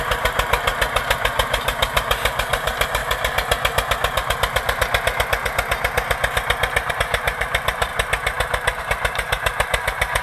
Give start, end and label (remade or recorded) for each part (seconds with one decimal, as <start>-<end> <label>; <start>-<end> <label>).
0.0-3.0 remade; 3.0-6.9 recorded; 6.9-7.9 remade; 7.9-8.8 recorded; 8.8-10.2 remade